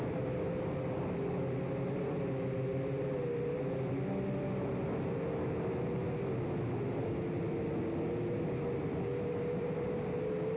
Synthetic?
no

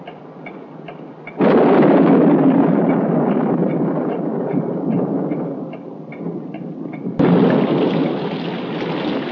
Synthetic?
no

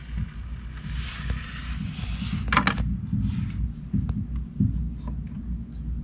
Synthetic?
no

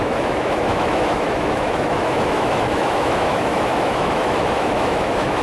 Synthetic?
yes